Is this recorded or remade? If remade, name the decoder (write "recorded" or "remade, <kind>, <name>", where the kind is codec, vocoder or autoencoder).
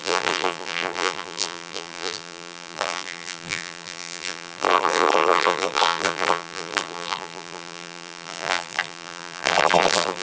remade, vocoder, BigVGAN v2